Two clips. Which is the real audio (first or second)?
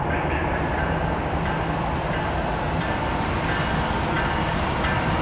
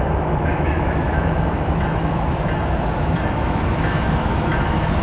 first